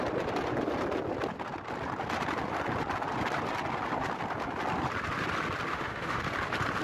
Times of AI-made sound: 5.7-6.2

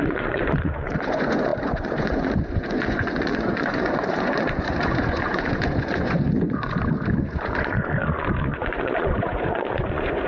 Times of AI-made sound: 0.0-10.3

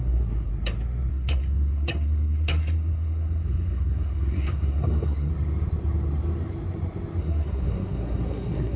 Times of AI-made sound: 0.0-0.5; 1.1-5.3; 7.2-8.8